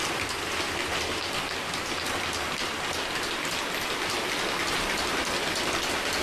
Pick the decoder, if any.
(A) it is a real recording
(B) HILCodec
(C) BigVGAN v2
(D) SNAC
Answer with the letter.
A